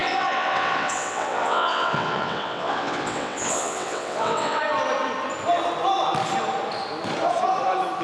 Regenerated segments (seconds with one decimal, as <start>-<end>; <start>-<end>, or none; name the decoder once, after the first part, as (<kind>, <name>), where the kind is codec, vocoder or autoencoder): 0.0-4.6 (vocoder, WaveNeXt)